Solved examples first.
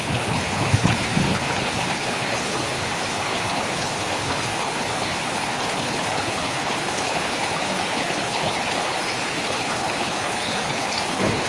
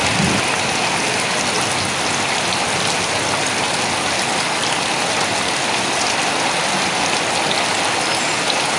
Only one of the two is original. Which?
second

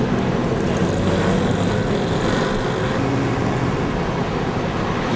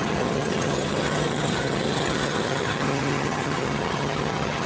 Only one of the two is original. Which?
first